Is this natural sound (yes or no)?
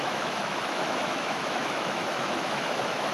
no